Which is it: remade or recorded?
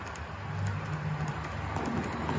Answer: recorded